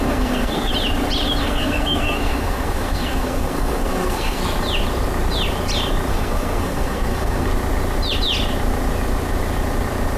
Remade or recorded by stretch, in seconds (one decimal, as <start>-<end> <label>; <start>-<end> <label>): 0.0-0.7 remade; 0.7-1.4 recorded; 1.4-4.4 remade; 4.4-6.1 recorded; 6.1-7.5 remade; 7.5-10.2 recorded